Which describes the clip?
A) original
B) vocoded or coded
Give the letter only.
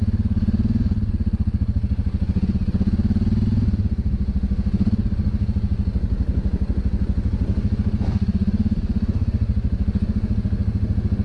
A